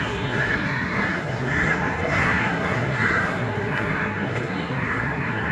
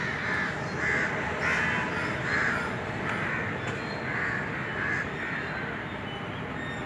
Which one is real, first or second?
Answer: second